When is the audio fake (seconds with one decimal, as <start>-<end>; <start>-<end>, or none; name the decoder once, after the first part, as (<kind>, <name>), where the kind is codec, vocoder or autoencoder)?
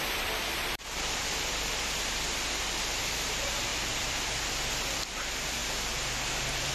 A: 0.0-6.7 (vocoder, BigVGAN v2)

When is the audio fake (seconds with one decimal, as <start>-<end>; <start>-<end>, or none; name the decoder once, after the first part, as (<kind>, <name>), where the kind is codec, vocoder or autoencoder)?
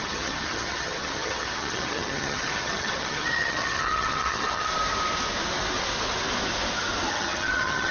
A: 0.0-4.7 (vocoder, HiFi-GAN); 7.1-7.9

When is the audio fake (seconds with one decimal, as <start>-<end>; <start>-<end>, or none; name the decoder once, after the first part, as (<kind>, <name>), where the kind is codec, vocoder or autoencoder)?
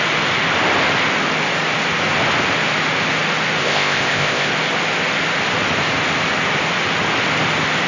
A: 3.6-4.5 (codec, ZipCodec)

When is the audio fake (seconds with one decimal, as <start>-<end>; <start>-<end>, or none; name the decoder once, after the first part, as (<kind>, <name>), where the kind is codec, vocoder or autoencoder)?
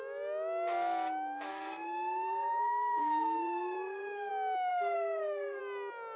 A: 1.5-4.3 (codec, SNAC); 4.7-5.6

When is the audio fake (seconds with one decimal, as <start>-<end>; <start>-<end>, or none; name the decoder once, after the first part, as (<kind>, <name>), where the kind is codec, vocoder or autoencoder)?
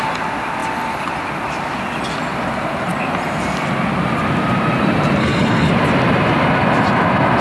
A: 5.2-5.7 (codec, HILCodec)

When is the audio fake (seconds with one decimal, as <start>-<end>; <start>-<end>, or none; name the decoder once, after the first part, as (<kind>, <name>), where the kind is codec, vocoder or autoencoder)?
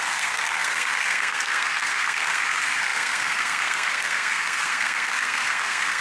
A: 0.0-6.0 (codec, SNAC)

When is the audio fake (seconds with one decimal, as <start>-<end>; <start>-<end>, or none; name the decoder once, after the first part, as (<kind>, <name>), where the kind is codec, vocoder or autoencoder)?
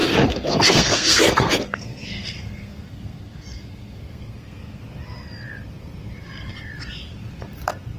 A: 0.0-4.8 (codec, SNAC)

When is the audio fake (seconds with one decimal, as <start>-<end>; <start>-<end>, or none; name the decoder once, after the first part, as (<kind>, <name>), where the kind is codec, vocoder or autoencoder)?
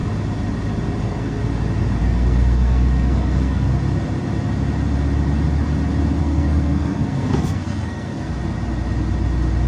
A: 1.0-1.4 (codec, SNAC); 2.0-3.7; 6.2-8.3